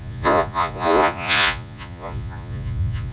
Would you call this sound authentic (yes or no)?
no